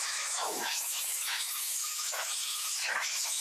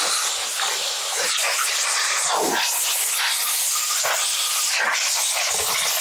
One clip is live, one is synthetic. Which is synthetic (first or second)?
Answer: first